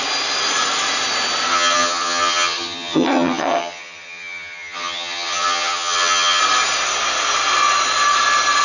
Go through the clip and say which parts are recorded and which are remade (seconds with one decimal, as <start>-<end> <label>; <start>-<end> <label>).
0.0-1.5 recorded; 1.5-6.4 remade; 6.4-8.6 recorded